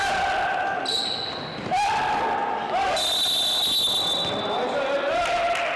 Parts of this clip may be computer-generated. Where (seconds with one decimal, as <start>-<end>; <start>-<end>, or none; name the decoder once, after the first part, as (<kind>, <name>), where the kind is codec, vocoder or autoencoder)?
0.0-2.2 (vocoder, BigVGAN v2)